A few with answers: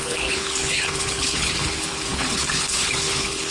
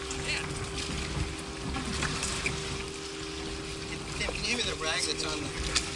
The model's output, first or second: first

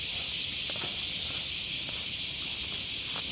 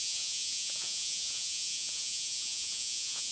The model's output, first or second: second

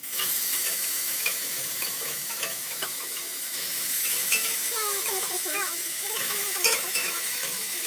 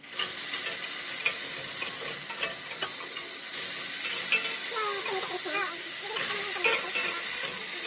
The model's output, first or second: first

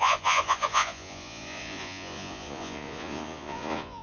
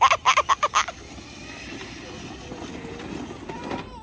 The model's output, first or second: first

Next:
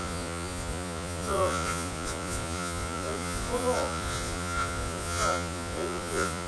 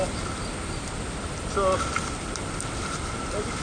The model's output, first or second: first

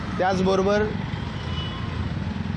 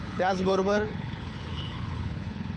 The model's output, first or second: second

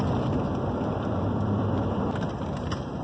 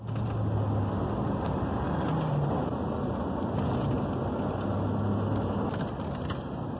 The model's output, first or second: first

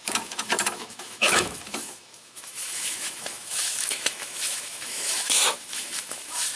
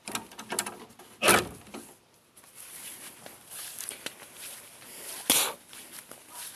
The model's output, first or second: first